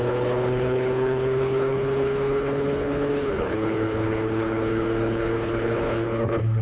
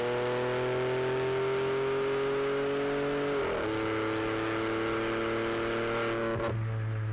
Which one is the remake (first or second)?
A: first